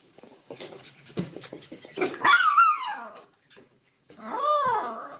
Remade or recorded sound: remade